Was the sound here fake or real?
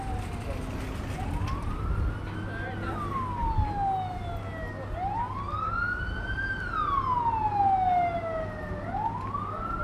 real